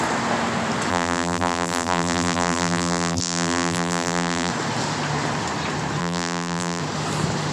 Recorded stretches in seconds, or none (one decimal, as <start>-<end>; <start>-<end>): 0.0-0.9; 4.5-6.0; 6.8-7.5